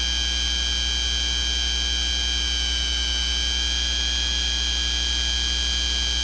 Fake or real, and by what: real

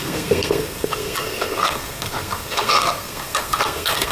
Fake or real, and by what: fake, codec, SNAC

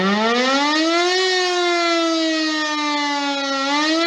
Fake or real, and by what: real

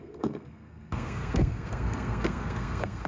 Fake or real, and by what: fake, codec, SNAC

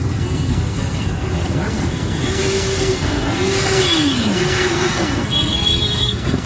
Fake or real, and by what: fake, codec, SNAC